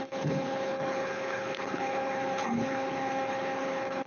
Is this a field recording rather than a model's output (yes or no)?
no